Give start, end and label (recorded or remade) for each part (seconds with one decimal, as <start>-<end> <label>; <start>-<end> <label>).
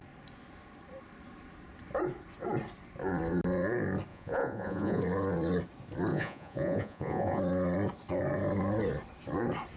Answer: 0.0-4.1 recorded; 4.1-5.0 remade; 5.0-6.1 recorded; 6.1-7.4 remade; 7.4-9.8 recorded